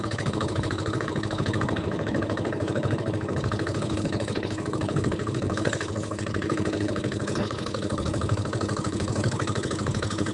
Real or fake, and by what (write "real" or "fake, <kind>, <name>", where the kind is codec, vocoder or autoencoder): fake, codec, HILCodec